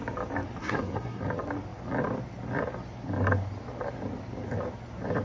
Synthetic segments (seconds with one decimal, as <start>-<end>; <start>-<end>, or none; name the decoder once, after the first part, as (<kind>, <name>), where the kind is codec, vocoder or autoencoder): 0.6-1.2 (codec, SNAC)